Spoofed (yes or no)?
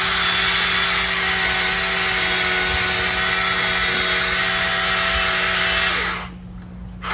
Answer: no